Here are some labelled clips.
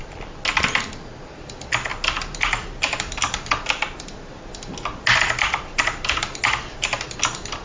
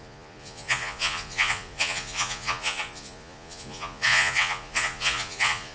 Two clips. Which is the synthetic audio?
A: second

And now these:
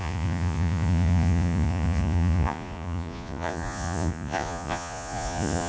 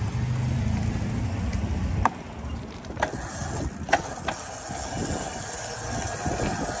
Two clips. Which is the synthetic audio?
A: first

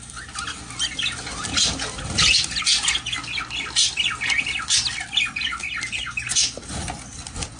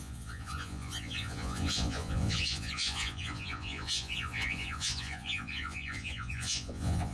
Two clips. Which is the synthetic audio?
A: second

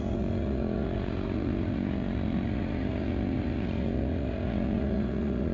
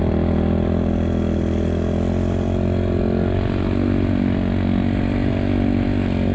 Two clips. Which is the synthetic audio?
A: first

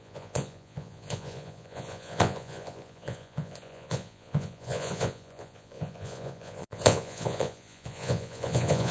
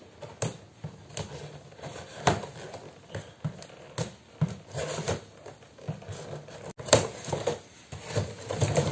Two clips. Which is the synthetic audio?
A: first